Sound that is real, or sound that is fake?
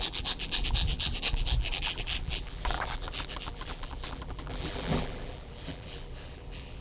fake